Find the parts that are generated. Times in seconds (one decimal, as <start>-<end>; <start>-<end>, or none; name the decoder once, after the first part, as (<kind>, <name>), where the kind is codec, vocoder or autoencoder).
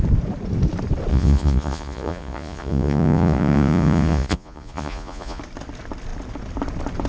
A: 1.1-5.4 (vocoder, Vocos)